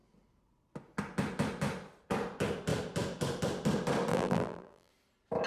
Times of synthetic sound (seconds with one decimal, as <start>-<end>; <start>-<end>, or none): 4.1-4.9